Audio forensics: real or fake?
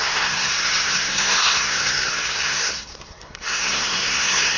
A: fake